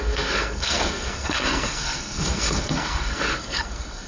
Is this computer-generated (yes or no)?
yes